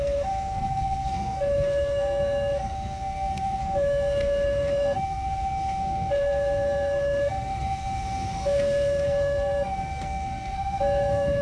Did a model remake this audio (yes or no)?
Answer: yes